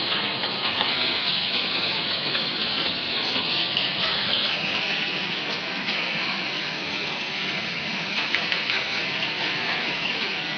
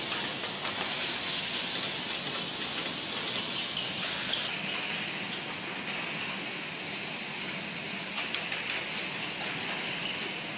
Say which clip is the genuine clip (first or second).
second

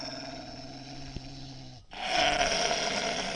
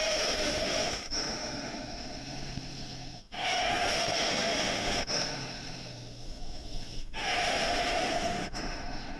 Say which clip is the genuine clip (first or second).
first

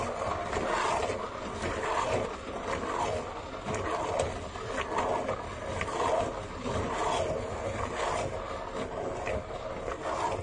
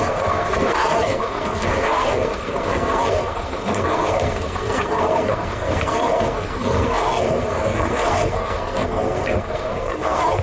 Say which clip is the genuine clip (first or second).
first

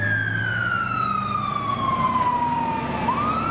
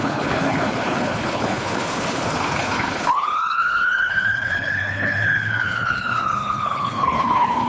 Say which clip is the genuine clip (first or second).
first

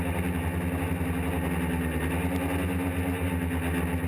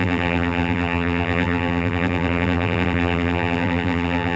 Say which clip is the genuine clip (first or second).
first